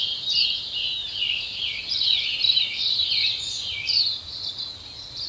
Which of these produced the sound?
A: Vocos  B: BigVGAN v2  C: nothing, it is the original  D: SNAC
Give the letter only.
C